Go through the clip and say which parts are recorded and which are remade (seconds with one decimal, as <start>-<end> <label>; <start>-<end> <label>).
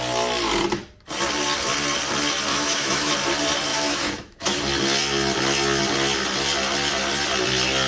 0.0-2.5 recorded; 2.5-3.1 remade; 3.1-3.7 recorded; 3.7-4.6 remade; 4.6-7.9 recorded